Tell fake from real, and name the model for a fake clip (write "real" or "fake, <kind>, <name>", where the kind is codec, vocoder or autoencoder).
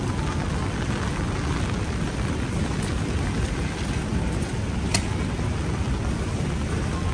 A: real